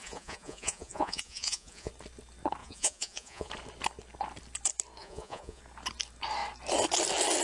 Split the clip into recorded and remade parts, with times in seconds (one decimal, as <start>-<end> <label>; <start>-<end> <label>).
0.0-1.9 remade; 1.9-2.6 recorded; 2.6-3.5 remade; 3.5-5.0 recorded; 5.0-5.6 remade; 5.6-7.4 recorded